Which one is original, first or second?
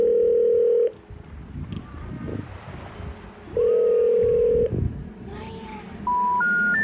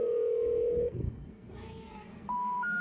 first